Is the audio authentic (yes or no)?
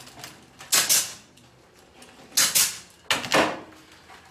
yes